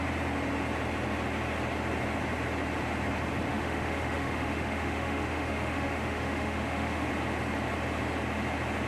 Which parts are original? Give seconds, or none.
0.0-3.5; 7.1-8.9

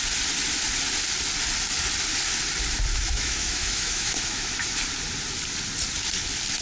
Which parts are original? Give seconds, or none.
0.0-2.9; 4.7-6.6

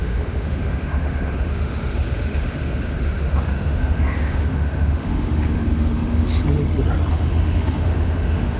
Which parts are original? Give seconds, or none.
6.4-7.1

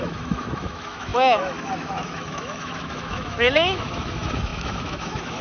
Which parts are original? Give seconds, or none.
none

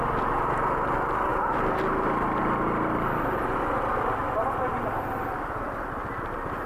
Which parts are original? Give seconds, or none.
0.0-6.7

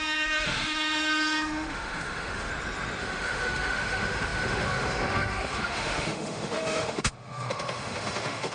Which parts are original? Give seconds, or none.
2.5-3.0